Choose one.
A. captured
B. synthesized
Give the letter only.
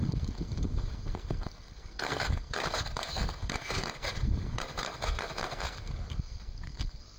B